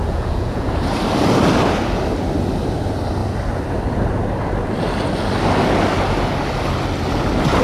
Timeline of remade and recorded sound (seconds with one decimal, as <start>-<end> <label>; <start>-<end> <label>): 0.0-0.7 remade; 0.7-7.6 recorded